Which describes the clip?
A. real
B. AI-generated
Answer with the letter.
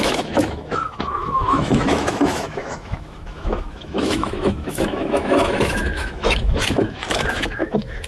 B